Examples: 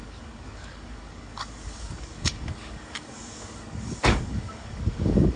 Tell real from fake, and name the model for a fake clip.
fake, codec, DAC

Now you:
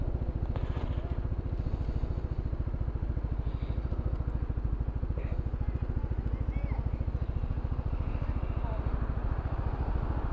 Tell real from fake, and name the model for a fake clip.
real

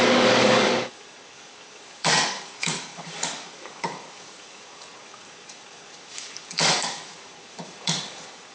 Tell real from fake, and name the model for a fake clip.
fake, codec, DAC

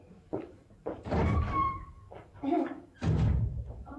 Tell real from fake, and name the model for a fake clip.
fake, codec, DAC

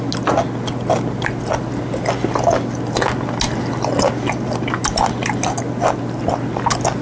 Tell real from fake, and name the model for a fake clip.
real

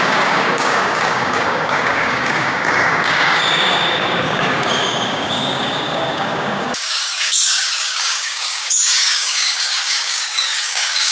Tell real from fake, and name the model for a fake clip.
fake, codec, DAC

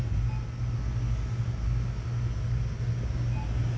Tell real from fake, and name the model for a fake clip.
real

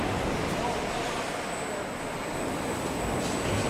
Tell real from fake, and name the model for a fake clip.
real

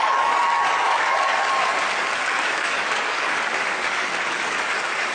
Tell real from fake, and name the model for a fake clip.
fake, codec, DAC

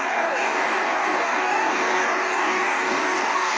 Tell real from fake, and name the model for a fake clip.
fake, codec, DAC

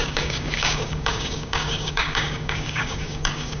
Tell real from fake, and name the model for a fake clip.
fake, codec, DAC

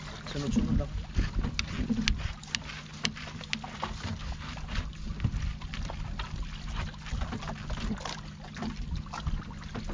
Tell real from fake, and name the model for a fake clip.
real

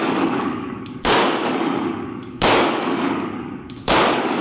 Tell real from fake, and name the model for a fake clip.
fake, codec, DAC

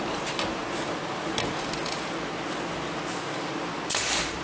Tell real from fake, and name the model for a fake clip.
real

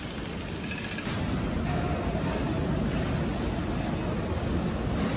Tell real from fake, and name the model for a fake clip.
real